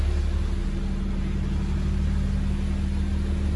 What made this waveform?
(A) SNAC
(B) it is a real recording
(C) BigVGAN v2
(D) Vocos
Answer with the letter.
B